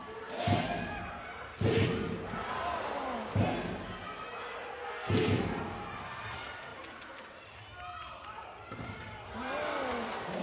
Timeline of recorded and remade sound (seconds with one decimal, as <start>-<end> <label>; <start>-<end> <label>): 0.0-4.7 recorded; 4.7-5.6 remade; 5.6-10.4 recorded